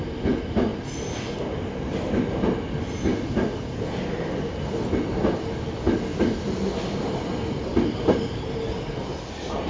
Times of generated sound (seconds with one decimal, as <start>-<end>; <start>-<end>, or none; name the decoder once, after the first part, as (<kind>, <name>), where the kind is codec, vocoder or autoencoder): 6.1-7.0 (vocoder, BigVGAN v2)